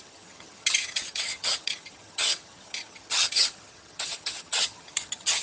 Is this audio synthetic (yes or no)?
yes